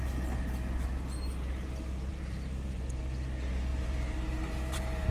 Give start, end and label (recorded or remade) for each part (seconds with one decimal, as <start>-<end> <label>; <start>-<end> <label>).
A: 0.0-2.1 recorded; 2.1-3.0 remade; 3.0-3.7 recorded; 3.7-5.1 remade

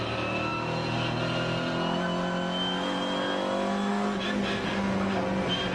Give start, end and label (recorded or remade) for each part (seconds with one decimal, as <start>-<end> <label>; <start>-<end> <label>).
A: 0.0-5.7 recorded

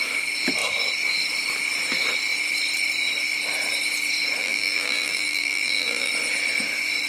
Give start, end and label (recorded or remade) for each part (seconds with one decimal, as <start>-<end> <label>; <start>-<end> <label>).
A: 0.0-4.4 recorded; 4.4-6.1 remade; 6.1-7.1 recorded

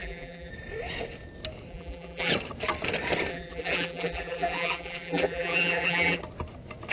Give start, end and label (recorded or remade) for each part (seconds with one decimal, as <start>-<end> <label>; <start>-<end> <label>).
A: 0.0-0.5 remade; 0.5-1.7 recorded; 1.7-2.3 remade; 2.3-3.3 recorded; 3.3-6.2 remade; 6.2-6.9 recorded

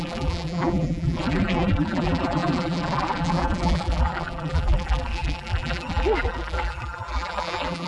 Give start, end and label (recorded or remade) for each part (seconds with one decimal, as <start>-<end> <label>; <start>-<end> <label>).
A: 0.0-7.9 remade

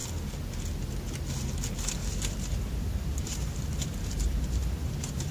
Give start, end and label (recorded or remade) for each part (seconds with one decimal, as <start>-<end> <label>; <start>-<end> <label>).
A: 0.0-2.0 recorded; 2.0-5.3 remade

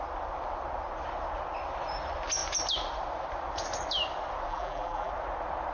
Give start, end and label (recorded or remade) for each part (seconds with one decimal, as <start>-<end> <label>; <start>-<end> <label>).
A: 0.0-4.5 recorded; 4.5-5.1 remade; 5.1-5.7 recorded